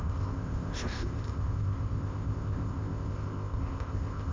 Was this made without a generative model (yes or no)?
no